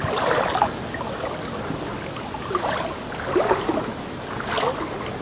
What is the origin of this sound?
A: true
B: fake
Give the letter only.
A